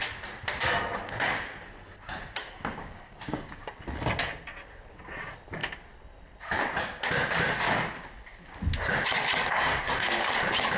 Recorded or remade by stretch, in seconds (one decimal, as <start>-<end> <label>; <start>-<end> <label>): 0.0-2.4 recorded; 2.4-3.7 remade; 3.7-9.5 recorded; 9.5-10.2 remade; 10.2-10.8 recorded